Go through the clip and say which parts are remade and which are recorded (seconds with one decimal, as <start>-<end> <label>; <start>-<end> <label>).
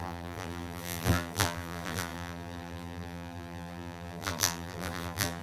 0.0-5.4 remade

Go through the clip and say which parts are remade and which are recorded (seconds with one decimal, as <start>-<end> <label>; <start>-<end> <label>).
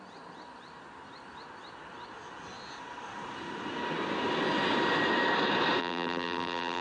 0.0-5.8 recorded; 5.8-6.8 remade